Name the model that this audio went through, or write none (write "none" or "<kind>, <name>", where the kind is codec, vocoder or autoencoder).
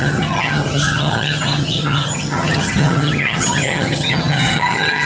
vocoder, HiFi-GAN